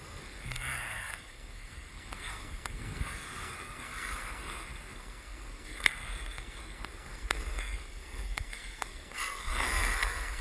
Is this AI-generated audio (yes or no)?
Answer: yes